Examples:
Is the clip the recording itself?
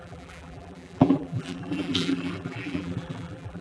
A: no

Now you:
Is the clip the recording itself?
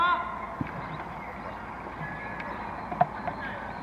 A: yes